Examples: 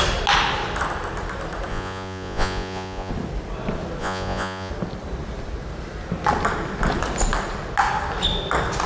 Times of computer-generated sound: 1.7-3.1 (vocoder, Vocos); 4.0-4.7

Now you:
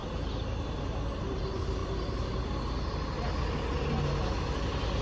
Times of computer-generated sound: none

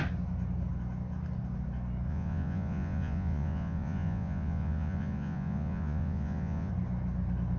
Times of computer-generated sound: 2.1-6.7 (vocoder, Vocos)

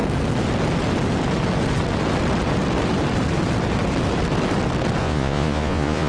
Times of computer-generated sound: 5.0-6.1 (vocoder, Vocos)

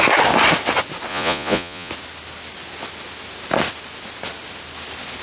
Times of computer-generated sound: 1.1-1.9 (vocoder, Vocos)

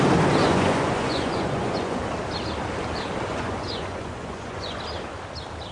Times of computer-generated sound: 0.4-2.0 (vocoder, Vocos); 3.3-4.8

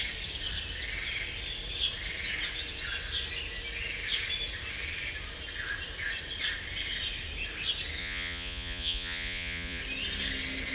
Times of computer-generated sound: 8.0-9.8 (vocoder, Vocos)

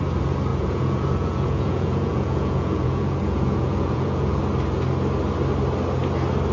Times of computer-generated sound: 0.5-4.4 (vocoder, Vocos)